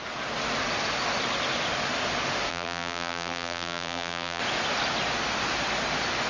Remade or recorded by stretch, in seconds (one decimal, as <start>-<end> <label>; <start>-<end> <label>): 0.0-2.5 recorded; 2.5-4.4 remade; 4.4-6.3 recorded